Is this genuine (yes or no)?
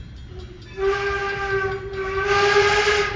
yes